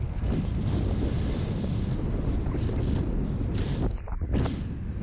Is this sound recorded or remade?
recorded